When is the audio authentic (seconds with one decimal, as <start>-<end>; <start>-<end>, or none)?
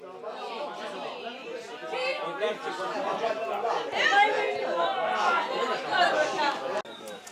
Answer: 0.0-7.3